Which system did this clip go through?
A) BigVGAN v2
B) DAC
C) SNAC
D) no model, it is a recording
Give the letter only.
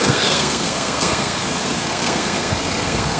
C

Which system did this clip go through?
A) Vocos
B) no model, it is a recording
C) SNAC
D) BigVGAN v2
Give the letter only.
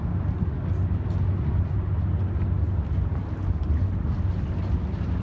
B